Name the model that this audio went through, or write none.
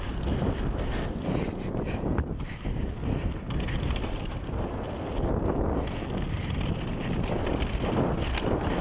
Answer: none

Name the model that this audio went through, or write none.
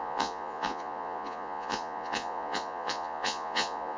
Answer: vocoder, Vocos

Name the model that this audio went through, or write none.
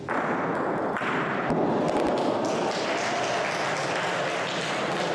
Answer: none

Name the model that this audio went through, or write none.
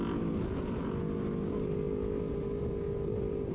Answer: none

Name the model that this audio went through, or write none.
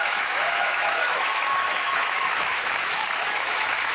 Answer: autoencoder, DAC-VAE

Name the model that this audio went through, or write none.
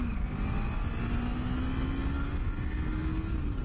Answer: none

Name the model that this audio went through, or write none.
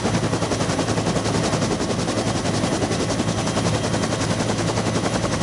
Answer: none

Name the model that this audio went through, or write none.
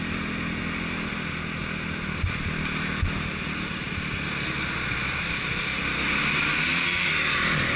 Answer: none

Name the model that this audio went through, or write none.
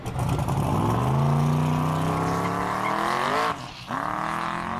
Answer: none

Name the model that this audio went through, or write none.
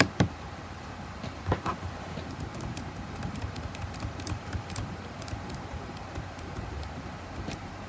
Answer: vocoder, BigVGAN v2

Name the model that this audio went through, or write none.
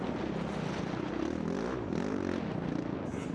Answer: none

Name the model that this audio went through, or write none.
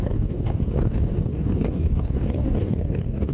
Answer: codec, DAC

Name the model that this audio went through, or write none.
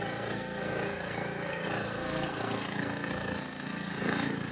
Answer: codec, SNAC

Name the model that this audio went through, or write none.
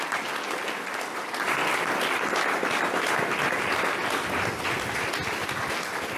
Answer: none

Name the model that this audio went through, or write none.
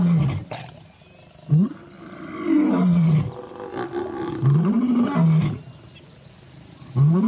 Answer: none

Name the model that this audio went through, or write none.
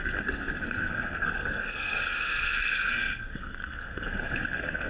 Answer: codec, SNAC